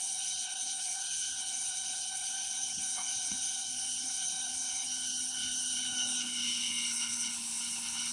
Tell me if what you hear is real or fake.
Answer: fake